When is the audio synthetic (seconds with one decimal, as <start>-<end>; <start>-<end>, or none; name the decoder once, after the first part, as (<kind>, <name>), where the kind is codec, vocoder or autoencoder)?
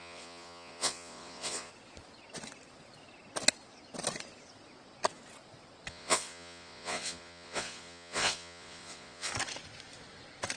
0.0-1.7 (vocoder, Vocos); 5.9-9.3